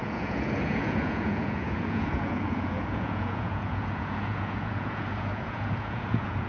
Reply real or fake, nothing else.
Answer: fake